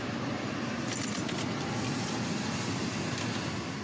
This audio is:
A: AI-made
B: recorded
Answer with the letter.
B